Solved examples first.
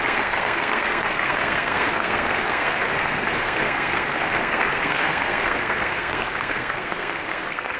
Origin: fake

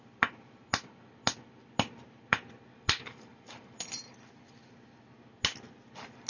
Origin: real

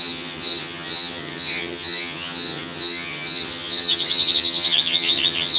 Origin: fake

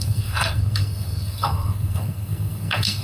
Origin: fake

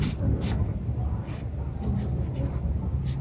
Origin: real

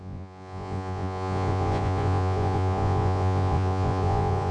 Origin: fake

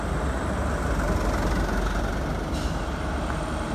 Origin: real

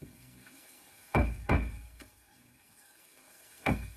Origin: fake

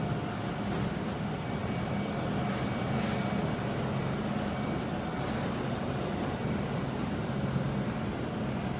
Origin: real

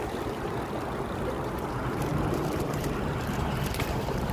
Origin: real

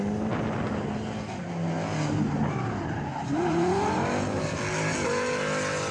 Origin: real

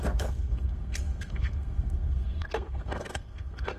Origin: fake